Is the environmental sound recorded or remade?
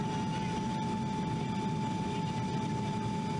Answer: recorded